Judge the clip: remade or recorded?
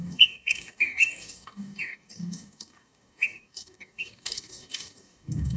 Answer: remade